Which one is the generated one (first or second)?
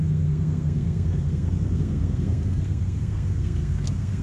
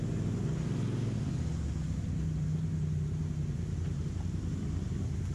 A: first